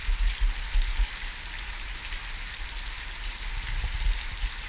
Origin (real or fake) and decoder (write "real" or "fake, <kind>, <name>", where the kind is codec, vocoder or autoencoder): real